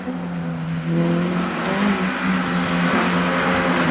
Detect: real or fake real